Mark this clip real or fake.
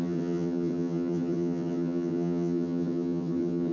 fake